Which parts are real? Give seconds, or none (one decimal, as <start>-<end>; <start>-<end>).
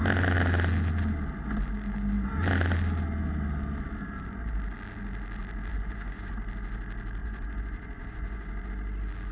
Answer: 0.0-5.7; 6.3-7.2; 8.7-9.3